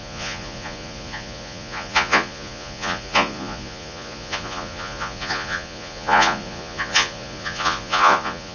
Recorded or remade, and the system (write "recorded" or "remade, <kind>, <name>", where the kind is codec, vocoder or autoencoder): remade, vocoder, Vocos